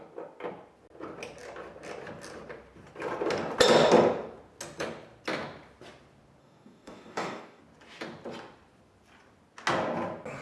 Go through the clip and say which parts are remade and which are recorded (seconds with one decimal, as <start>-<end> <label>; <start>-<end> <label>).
0.0-6.4 recorded; 6.4-7.6 remade; 7.6-10.4 recorded